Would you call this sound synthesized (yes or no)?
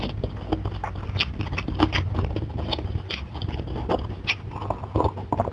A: no